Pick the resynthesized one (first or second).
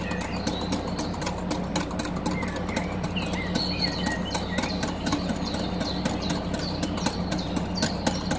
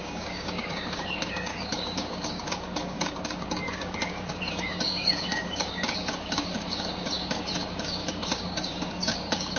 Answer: second